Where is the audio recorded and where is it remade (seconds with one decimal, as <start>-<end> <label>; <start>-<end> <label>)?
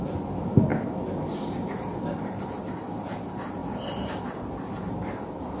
0.0-5.6 recorded